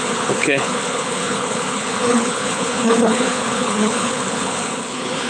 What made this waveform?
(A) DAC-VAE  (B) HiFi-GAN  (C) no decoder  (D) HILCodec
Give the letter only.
D